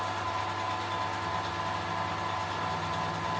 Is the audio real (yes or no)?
yes